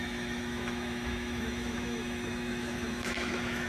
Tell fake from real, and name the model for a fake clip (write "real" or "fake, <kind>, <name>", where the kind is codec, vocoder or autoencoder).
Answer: fake, autoencoder, DAC-VAE